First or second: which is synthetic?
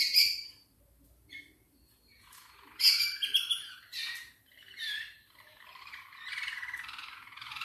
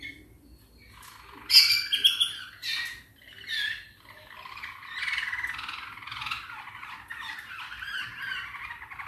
first